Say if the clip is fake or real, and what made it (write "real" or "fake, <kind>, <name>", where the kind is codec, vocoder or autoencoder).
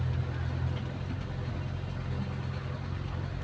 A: real